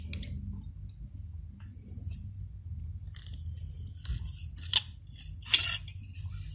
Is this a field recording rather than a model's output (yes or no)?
yes